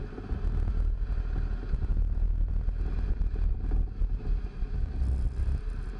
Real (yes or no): yes